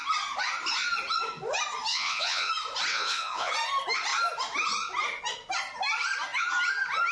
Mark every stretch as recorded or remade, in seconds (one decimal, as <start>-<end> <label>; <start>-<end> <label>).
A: 0.0-1.9 recorded; 1.9-2.5 remade; 2.5-2.9 recorded; 2.9-3.5 remade; 3.5-7.1 recorded